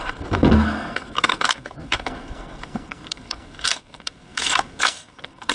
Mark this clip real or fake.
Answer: fake